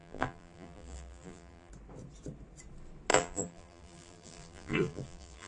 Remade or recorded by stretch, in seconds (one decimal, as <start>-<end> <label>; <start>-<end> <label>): 0.0-1.7 remade; 1.7-3.1 recorded; 3.1-5.5 remade